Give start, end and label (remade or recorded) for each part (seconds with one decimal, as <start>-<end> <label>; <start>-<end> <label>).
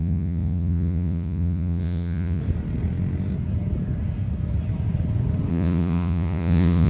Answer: 0.0-2.4 remade; 2.4-5.5 recorded; 5.5-6.9 remade